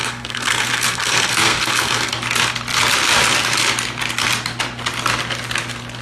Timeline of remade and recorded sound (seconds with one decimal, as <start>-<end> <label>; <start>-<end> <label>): 0.0-2.1 remade; 2.1-6.0 recorded